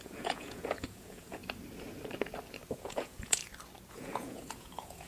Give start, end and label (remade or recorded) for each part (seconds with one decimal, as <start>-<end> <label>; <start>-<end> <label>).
0.0-1.4 remade; 1.4-2.7 recorded; 2.7-3.4 remade; 3.4-3.9 recorded; 3.9-5.1 remade